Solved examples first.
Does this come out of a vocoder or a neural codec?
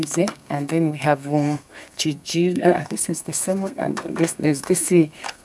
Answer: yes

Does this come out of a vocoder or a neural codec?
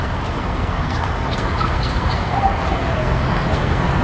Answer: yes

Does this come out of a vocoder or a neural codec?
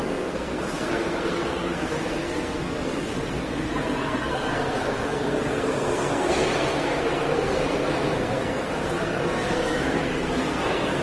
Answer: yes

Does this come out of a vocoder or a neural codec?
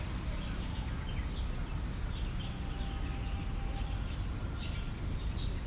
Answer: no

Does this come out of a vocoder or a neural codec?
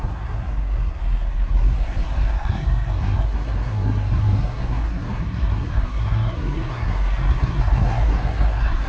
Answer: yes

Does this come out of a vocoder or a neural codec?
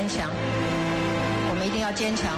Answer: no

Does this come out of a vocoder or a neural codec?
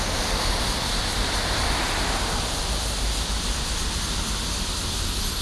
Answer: no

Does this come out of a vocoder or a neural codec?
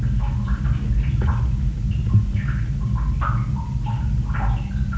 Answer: no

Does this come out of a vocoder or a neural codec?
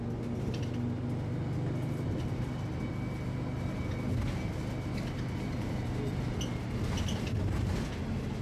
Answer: no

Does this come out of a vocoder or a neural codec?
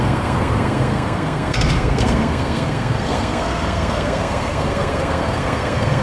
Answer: yes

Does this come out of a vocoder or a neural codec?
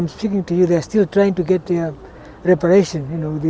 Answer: no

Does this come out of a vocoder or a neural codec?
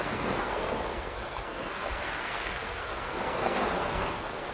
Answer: yes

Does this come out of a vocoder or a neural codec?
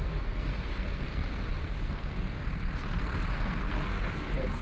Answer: yes